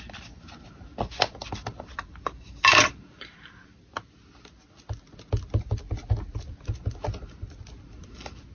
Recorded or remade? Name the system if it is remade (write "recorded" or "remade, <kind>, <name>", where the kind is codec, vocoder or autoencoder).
recorded